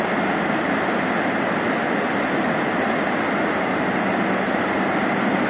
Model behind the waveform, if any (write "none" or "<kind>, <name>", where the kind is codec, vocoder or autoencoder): none